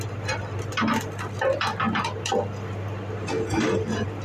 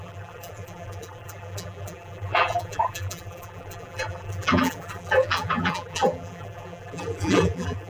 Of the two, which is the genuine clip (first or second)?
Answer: first